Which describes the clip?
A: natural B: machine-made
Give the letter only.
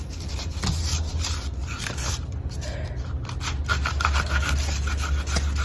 A